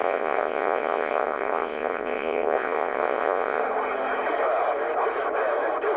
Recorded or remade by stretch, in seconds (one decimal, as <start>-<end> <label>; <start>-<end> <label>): 0.0-3.6 remade; 3.6-6.0 recorded